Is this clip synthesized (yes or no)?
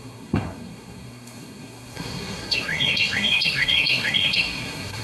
yes